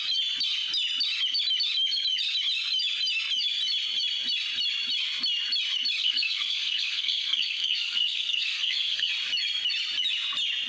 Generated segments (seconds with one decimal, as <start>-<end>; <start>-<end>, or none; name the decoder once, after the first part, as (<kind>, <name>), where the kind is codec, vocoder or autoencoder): 6.0-9.1 (codec, SNAC)